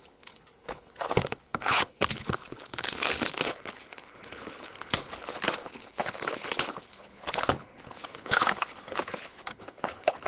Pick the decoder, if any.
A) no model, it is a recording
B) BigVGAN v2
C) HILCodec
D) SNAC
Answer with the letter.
C